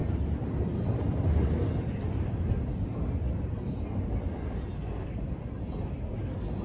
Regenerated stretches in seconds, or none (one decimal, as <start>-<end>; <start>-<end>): none